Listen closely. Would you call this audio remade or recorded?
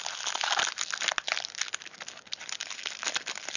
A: recorded